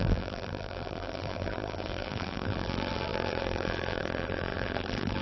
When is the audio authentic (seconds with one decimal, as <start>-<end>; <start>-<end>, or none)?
none